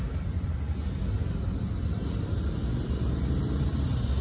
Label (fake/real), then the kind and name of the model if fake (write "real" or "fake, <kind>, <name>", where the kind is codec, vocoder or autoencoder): real